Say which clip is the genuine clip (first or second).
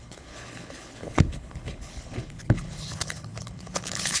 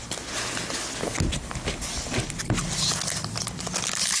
second